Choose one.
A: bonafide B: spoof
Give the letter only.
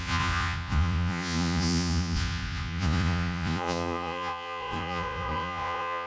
B